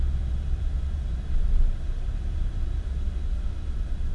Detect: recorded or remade remade